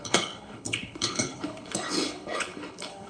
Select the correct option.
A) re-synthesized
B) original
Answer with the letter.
A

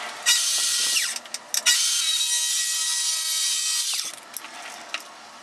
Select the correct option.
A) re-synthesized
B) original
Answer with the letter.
B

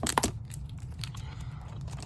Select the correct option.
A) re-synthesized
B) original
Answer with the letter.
B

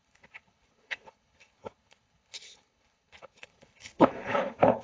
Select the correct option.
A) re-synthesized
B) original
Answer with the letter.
A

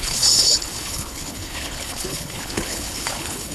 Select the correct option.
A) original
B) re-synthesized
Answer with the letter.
B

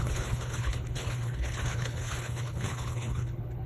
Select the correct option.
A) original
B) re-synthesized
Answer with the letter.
B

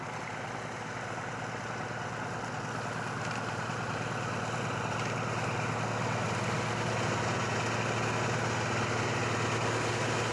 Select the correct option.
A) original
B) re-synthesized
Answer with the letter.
A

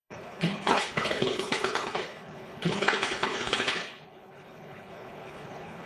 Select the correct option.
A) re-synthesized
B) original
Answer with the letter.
A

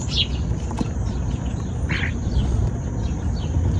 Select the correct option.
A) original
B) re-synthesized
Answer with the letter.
A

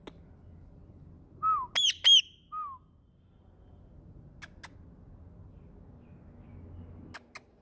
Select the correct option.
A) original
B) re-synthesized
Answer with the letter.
A